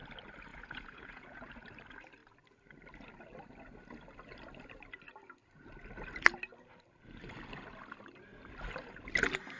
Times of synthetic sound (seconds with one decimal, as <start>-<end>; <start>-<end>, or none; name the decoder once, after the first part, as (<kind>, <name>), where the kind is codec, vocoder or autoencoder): 0.5-1.5 (vocoder, Vocos)